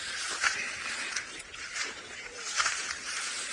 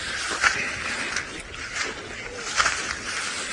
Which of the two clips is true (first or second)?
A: second